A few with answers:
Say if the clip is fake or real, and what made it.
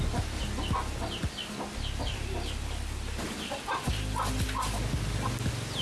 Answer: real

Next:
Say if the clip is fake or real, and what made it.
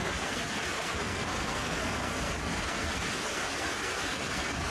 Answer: fake, codec, SNAC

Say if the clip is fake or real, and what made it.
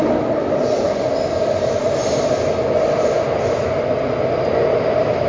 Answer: real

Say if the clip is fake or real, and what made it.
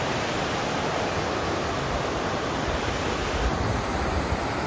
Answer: real